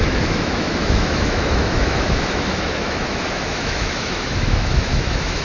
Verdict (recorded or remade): remade